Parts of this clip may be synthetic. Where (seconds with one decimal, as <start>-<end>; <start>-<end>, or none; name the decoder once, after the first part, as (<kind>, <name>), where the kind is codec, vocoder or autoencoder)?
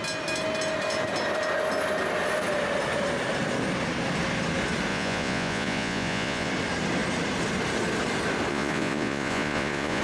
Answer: 4.9-6.5 (vocoder, Vocos); 8.5-10.0